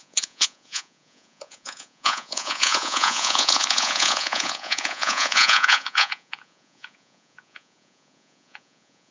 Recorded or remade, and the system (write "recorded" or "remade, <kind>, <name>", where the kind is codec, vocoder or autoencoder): remade, vocoder, Vocos